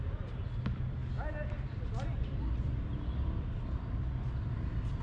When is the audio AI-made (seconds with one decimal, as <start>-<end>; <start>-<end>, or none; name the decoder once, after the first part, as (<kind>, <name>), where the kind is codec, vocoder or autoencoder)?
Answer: none